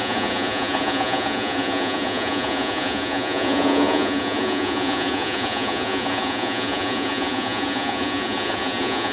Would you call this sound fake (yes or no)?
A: yes